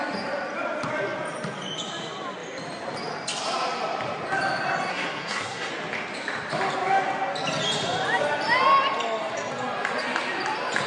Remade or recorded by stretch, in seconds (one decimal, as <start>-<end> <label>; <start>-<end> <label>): 0.0-4.9 recorded; 4.9-5.7 remade; 5.7-10.9 recorded